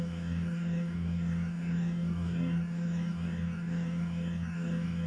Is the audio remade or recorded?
remade